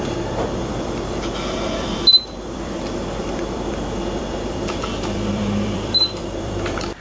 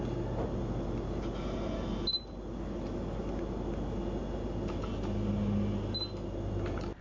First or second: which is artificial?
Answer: first